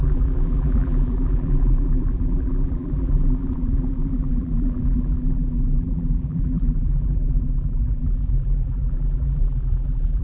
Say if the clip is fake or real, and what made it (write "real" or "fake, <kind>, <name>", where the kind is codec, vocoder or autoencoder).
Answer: fake, vocoder, BigVGAN v2